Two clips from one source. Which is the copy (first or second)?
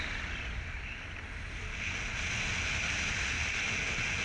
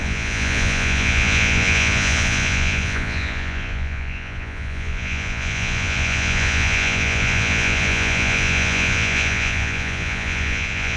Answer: second